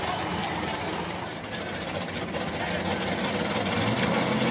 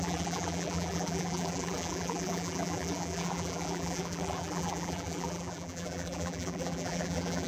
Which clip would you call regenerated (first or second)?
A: second